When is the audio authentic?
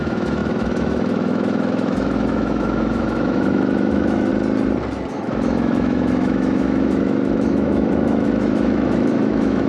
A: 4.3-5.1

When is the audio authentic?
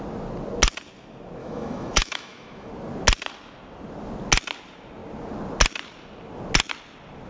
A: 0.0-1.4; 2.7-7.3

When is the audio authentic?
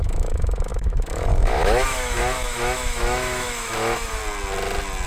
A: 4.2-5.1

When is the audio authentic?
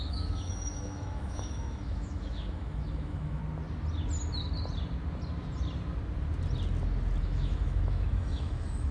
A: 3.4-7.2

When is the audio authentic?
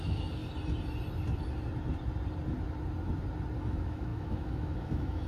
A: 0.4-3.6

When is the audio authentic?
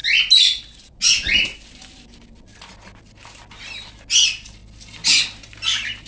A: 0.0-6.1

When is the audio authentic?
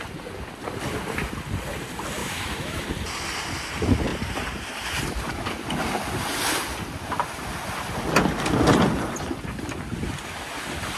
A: 0.0-2.2; 2.8-11.0